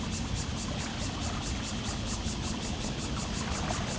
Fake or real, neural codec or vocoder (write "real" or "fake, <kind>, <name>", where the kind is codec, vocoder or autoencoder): real